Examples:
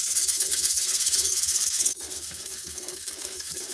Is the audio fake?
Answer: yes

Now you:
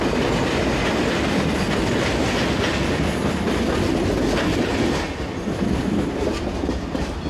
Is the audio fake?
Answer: no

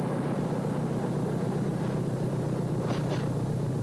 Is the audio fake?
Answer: no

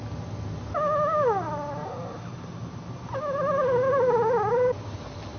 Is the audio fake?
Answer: no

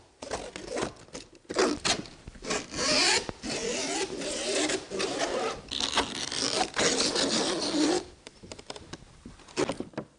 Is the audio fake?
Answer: no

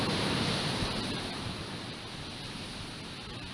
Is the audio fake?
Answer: no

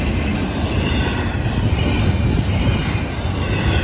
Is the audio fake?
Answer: no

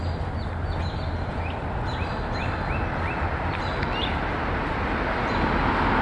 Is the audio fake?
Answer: no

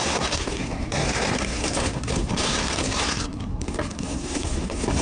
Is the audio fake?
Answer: yes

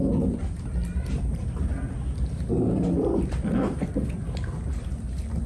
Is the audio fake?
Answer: no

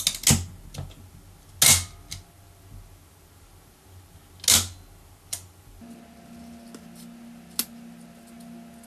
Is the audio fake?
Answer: no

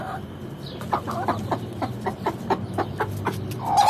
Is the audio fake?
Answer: no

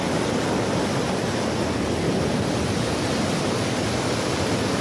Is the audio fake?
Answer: no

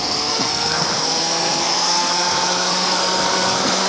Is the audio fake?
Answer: yes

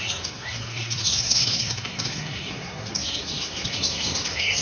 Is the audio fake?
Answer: yes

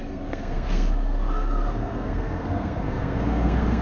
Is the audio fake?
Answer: yes